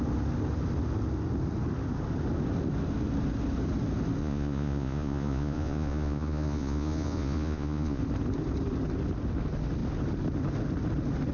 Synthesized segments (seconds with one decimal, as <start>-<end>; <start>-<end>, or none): 4.2-8.0